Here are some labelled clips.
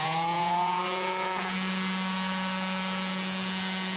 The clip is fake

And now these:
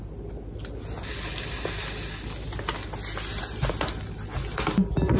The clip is real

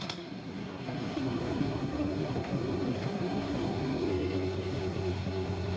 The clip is fake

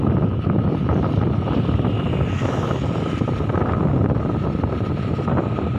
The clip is real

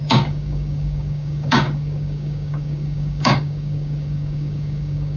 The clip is fake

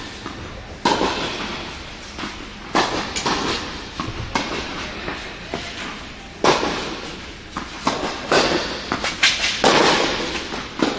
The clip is real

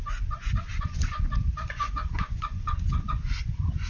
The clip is fake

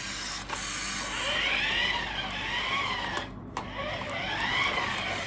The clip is real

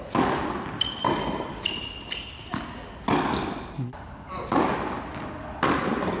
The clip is real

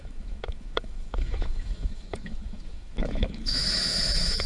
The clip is fake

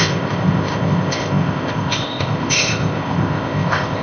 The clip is fake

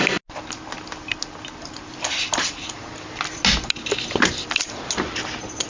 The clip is real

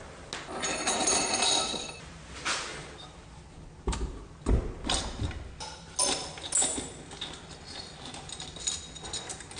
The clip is real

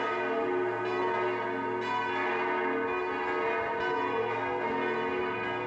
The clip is real